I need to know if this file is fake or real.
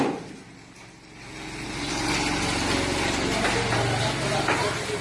real